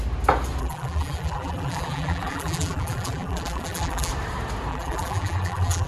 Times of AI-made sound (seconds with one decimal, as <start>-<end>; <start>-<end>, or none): 0.6-4.1; 4.7-5.9